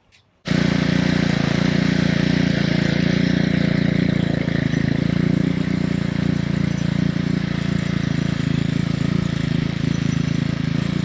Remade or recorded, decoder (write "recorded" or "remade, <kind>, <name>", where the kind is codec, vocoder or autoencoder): remade, vocoder, BigVGAN v2